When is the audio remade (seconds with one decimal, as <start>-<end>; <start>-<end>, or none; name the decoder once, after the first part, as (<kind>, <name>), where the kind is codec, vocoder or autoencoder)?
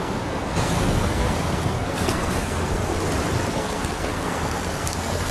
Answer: 0.0-2.9 (codec, SNAC); 3.5-5.3